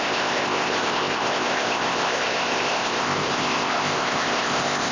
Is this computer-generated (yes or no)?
yes